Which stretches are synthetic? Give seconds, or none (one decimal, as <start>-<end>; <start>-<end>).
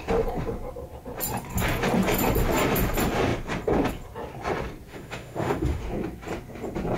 4.9-5.8